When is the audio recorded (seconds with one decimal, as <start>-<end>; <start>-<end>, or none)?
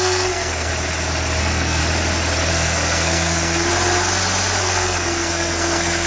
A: 0.7-1.4; 1.8-2.5; 3.7-4.6